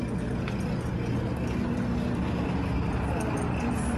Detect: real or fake real